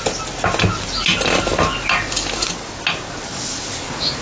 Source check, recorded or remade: recorded